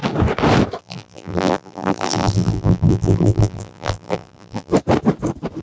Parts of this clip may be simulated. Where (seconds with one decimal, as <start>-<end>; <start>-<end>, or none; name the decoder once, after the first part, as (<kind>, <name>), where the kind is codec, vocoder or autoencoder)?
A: 0.8-4.7 (vocoder, BigVGAN v2)